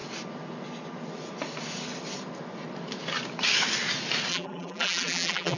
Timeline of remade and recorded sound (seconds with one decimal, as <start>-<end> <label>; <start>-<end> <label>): 0.0-4.3 recorded; 4.3-5.6 remade